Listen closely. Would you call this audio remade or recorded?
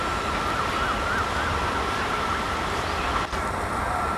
recorded